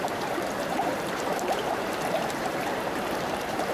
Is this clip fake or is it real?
fake